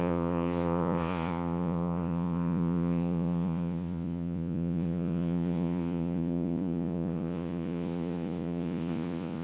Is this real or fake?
fake